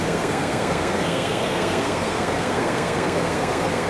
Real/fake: fake